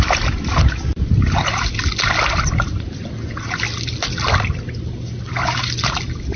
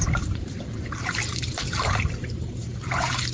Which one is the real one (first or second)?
first